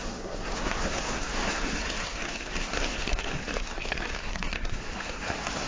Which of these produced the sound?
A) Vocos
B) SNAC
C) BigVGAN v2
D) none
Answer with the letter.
B